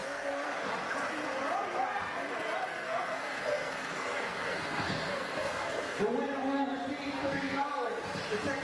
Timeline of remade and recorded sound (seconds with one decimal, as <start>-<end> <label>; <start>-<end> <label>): 0.0-0.7 remade; 0.7-2.7 recorded; 2.7-6.0 remade; 6.0-7.2 recorded; 7.2-7.9 remade; 7.9-8.6 recorded